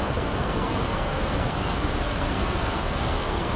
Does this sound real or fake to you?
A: fake